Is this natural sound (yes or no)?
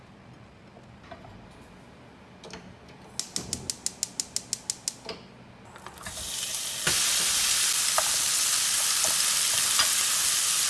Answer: yes